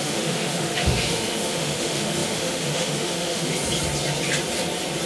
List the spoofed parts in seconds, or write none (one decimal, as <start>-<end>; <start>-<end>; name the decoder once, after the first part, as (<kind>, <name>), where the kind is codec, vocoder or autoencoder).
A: 0.0-3.5 (autoencoder, DAC-VAE)